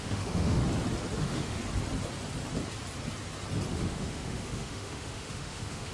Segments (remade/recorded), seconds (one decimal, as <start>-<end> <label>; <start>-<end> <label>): 0.0-0.6 remade; 0.6-1.2 recorded; 1.2-1.6 remade; 1.6-3.7 recorded; 3.7-5.9 remade